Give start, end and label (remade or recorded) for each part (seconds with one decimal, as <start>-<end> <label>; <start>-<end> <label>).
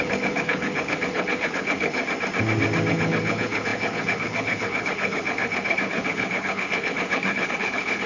0.0-2.0 remade; 2.0-2.9 recorded; 2.9-8.1 remade